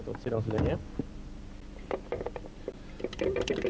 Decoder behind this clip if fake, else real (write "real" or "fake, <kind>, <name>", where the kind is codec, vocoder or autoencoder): fake, vocoder, BigVGAN v2